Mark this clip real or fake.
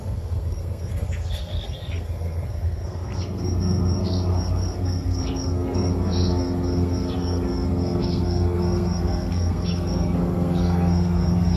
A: fake